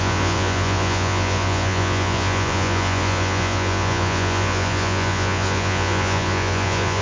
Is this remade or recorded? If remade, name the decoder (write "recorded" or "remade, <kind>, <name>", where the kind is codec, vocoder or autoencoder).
remade, vocoder, Vocos